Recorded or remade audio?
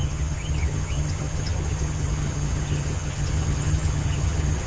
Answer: remade